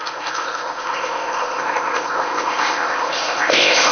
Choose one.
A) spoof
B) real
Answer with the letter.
A